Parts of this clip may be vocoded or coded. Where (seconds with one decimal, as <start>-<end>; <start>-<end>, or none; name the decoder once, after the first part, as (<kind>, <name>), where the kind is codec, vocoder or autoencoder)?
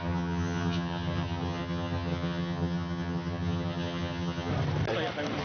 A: 0.0-4.5 (vocoder, HiFi-GAN)